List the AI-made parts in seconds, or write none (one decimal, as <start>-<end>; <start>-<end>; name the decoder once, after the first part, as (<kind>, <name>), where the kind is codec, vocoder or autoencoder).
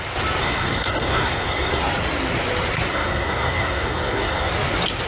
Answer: 0.4-1.8 (codec, SNAC); 2.9-4.5